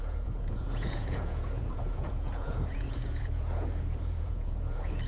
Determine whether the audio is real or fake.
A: fake